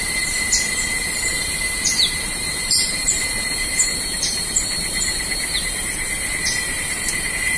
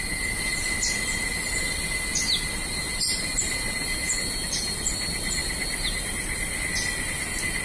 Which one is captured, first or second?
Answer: second